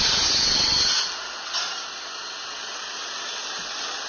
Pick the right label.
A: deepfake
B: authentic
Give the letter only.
B